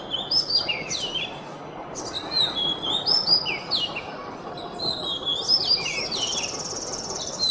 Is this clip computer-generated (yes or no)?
no